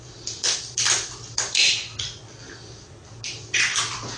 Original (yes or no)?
no